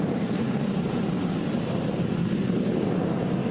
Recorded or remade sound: remade